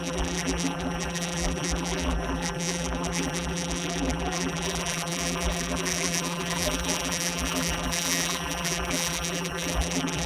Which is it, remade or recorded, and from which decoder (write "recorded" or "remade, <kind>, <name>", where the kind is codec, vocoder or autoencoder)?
remade, vocoder, BigVGAN v2